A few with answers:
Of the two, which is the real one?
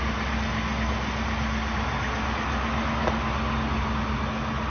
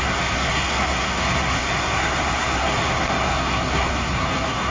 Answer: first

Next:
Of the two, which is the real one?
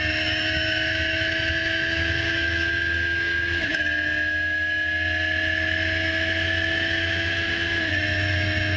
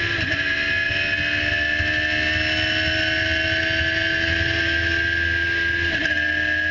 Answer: second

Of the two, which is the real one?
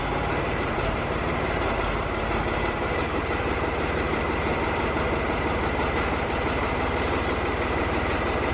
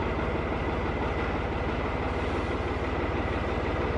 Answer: second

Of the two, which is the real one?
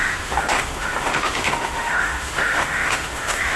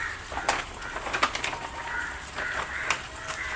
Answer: second